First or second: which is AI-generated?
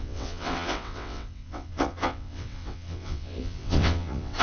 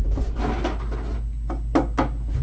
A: first